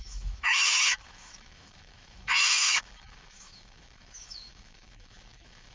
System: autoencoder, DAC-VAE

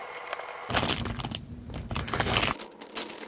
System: none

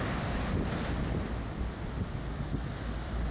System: none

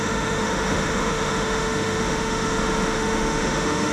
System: autoencoder, DAC-VAE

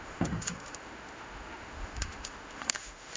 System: autoencoder, DAC-VAE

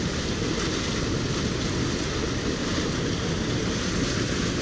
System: none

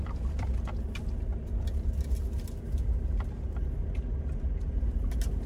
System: none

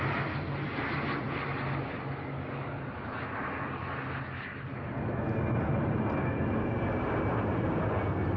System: none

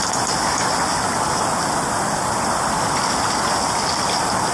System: none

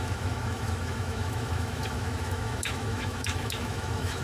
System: autoencoder, DAC-VAE